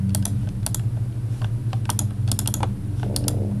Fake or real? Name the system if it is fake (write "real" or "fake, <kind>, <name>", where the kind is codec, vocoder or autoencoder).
real